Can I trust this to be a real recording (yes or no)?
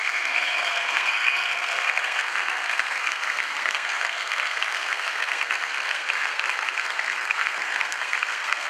no